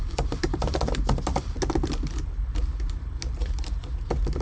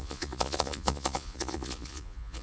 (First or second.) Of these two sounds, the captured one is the first